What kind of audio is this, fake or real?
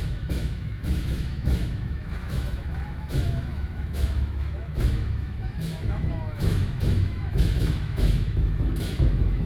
fake